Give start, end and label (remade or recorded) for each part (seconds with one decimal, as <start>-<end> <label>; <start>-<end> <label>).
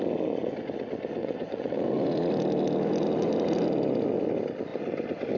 0.0-1.2 recorded; 1.2-2.3 remade; 2.3-5.4 recorded